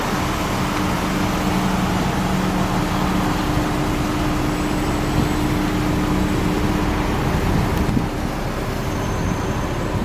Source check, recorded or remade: recorded